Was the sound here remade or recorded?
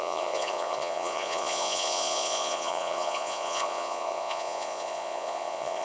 remade